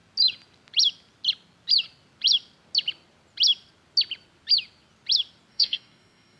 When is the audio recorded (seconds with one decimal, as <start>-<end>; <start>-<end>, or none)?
0.0-5.5